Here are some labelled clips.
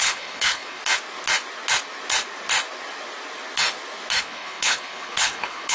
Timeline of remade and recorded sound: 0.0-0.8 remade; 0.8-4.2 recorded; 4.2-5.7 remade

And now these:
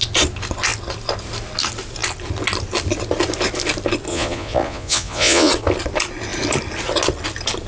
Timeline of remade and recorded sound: 0.0-4.1 recorded; 4.1-5.5 remade; 5.5-7.7 recorded